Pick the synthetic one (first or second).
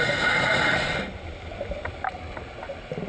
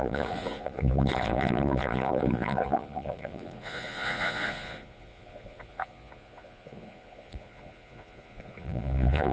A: second